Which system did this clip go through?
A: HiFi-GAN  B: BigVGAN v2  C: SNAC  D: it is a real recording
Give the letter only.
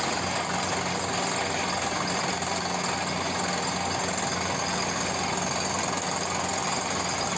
D